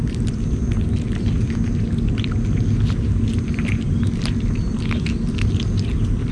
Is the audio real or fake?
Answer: real